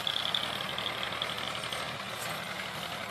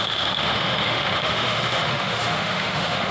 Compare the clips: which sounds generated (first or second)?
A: second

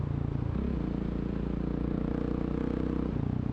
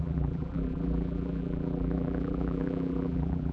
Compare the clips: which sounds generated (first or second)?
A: second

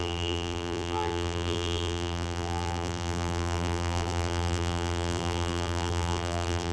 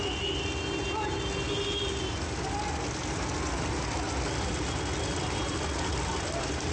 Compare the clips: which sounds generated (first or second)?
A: first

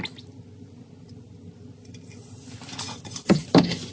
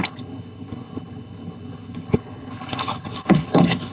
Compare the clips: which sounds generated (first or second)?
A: second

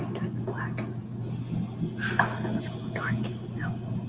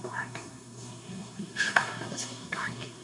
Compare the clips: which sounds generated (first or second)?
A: second